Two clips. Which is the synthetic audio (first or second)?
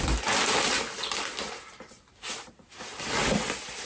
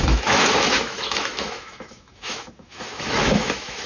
second